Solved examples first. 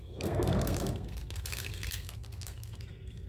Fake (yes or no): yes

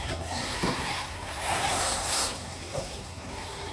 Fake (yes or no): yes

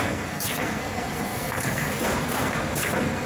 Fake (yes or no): yes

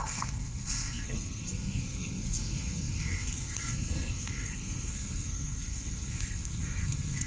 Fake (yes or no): yes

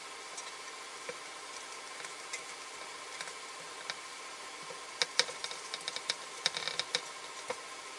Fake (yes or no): no